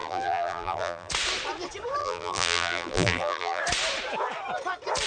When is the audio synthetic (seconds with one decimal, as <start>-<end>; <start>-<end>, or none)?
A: 0.0-1.1; 2.0-3.6